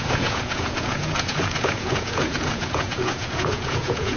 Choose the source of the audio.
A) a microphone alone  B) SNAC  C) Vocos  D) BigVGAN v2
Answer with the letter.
C